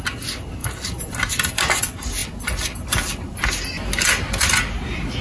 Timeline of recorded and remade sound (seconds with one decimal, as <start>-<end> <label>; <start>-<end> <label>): 0.0-5.2 recorded